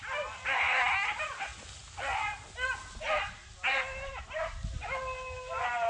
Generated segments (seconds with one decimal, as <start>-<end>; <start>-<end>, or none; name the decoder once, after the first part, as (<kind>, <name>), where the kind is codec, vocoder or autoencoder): none